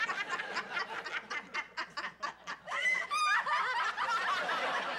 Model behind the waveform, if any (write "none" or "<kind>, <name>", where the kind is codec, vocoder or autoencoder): none